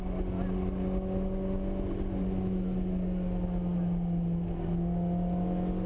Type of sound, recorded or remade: recorded